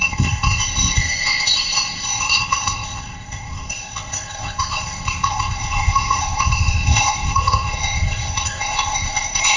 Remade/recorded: remade